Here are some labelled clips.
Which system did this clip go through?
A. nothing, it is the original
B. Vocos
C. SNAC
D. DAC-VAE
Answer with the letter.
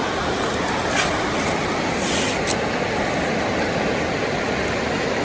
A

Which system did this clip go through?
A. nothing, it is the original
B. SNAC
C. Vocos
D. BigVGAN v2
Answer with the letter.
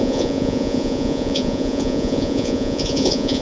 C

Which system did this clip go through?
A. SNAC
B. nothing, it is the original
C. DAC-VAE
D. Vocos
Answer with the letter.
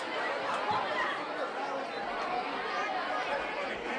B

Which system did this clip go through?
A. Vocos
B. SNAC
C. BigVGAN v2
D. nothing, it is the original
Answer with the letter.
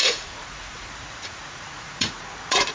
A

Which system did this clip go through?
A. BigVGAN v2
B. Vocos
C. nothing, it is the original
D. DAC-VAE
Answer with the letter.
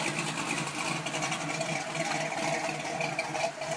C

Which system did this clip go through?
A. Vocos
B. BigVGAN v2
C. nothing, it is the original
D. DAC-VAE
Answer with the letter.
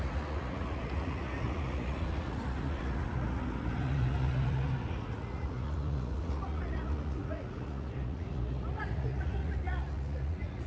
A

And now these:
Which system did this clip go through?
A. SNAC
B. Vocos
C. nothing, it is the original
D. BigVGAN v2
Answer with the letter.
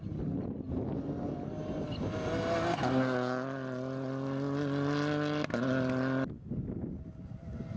C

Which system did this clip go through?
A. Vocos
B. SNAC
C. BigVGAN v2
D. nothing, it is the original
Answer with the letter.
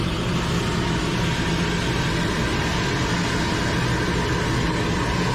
D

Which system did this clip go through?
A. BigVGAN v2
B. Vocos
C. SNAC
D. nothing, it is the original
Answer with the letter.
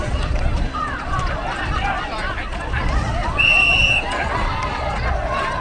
B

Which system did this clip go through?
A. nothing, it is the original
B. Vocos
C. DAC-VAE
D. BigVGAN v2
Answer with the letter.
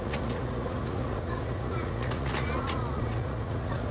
B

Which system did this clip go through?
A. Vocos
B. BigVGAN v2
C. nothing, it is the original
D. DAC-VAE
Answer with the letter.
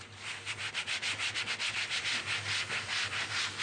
C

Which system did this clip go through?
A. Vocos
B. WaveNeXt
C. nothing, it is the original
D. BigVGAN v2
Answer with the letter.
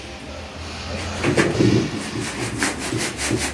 C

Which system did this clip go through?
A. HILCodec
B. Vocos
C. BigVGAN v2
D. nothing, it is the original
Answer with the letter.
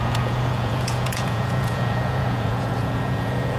B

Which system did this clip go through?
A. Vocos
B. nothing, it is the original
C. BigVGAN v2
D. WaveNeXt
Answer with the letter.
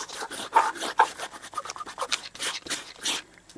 B